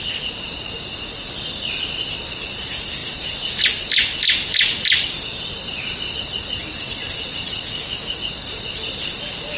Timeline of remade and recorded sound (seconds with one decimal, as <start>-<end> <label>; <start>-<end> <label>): 0.0-7.7 recorded; 7.7-8.2 remade; 8.2-9.6 recorded